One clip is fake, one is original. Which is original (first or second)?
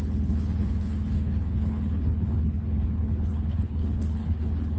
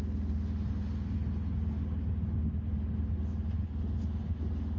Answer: second